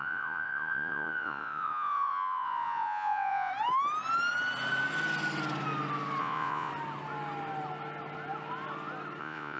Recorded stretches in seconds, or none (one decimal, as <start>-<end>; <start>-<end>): 3.5-6.2; 6.7-9.2